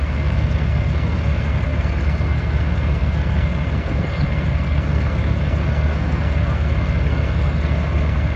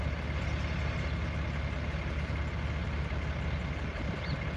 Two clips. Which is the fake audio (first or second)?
first